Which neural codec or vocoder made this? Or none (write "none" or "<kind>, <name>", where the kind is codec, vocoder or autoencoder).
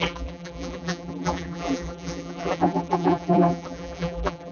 vocoder, BigVGAN v2